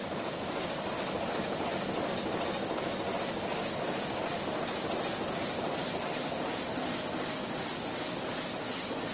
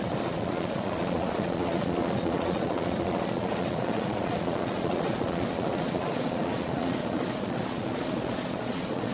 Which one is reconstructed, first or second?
second